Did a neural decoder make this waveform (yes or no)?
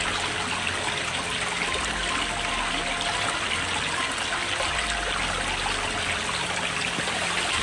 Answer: no